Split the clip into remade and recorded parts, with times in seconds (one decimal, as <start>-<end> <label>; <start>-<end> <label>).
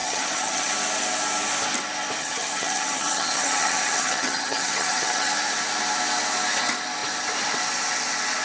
0.0-0.7 remade; 0.7-2.2 recorded; 2.2-5.3 remade; 5.3-8.4 recorded